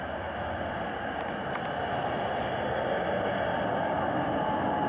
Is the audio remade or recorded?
recorded